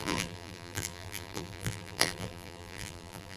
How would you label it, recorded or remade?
remade